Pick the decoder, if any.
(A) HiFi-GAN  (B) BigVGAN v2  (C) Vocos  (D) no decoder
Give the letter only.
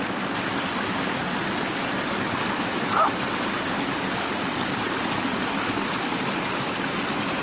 D